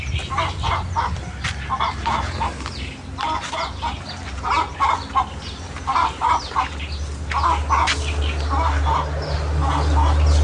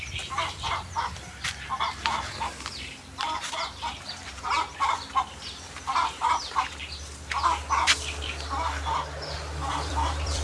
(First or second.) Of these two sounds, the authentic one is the first